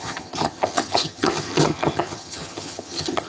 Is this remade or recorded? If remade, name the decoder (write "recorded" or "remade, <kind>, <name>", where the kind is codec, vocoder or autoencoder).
remade, vocoder, HiFi-GAN